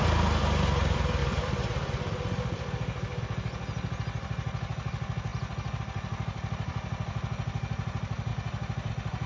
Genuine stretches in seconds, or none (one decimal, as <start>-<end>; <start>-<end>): 0.0-1.2; 3.2-9.3